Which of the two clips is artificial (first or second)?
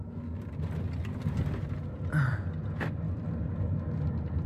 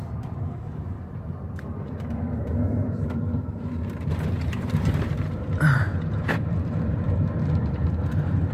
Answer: second